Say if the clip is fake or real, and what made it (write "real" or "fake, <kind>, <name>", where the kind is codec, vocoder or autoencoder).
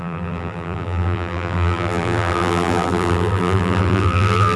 fake, vocoder, BigVGAN v2